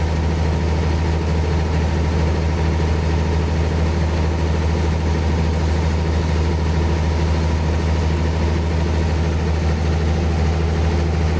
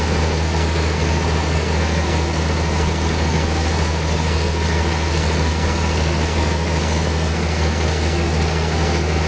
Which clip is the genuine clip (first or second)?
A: first